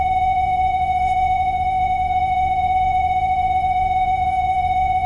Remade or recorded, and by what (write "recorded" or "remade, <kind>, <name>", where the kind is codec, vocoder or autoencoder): remade, vocoder, Vocos